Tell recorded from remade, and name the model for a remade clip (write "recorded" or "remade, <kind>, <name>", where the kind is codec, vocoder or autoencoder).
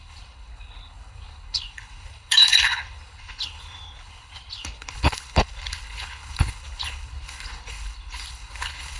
remade, codec, HILCodec